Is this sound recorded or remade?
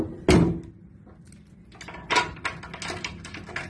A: recorded